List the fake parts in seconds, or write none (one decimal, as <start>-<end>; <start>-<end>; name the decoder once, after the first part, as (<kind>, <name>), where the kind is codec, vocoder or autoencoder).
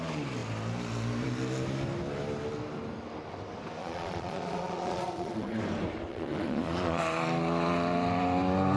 3.8-5.6 (vocoder, Vocos); 6.1-7.0